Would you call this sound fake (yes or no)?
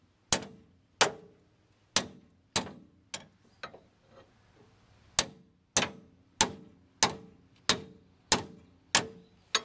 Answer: no